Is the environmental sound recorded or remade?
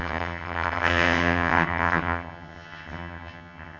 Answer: remade